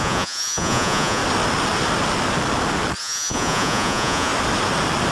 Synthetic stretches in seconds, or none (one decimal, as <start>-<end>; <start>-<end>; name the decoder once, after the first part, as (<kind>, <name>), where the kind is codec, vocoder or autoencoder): 0.0-1.2 (vocoder, Vocos); 3.0-4.3